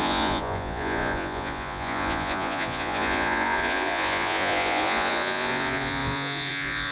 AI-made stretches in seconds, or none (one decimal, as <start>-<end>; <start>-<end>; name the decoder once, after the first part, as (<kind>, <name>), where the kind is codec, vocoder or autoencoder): 0.0-6.9 (vocoder, Vocos)